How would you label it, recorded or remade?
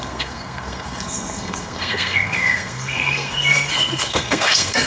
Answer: remade